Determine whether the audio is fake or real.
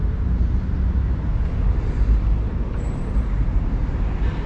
fake